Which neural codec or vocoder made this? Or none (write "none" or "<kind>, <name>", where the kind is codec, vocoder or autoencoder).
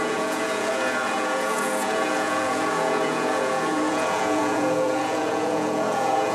vocoder, Vocos